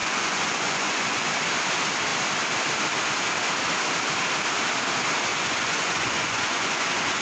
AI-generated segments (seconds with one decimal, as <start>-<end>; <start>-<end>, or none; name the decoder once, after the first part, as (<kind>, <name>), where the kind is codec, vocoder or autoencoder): 0.0-1.3 (vocoder, Vocos); 5.3-7.2